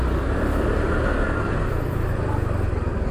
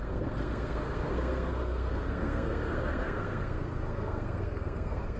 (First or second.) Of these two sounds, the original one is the first